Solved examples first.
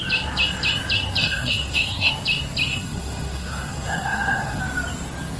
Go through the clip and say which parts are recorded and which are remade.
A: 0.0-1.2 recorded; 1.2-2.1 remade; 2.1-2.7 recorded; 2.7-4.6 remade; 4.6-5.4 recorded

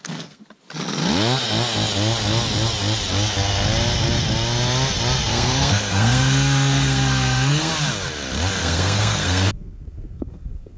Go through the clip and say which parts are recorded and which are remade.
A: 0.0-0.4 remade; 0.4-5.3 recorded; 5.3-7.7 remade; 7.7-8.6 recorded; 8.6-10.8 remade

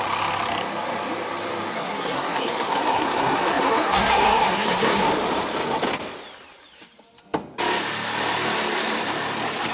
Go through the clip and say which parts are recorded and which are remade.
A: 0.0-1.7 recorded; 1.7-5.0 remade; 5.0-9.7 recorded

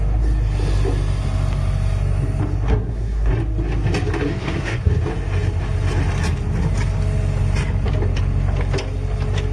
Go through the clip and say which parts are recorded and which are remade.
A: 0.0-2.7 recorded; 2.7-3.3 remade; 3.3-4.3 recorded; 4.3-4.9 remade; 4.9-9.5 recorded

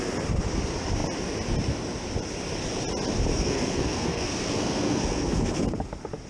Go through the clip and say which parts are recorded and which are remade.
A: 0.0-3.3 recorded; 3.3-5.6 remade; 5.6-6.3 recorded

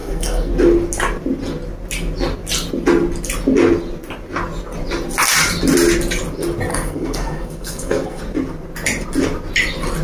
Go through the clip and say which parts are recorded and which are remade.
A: 0.0-0.5 remade; 0.5-6.7 recorded; 6.7-8.2 remade; 8.2-10.0 recorded

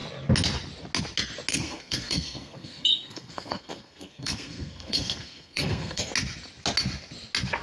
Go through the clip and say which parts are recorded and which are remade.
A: 0.0-1.5 recorded; 1.5-6.1 remade; 6.1-7.6 recorded